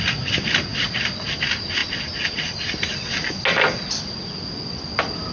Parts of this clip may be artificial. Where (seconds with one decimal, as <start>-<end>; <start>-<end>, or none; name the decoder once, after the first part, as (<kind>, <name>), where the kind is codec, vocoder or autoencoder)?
0.7-1.4 (vocoder, BigVGAN v2)